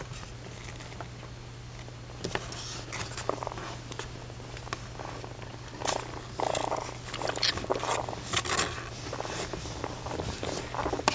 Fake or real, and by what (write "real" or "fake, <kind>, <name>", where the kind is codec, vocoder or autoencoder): real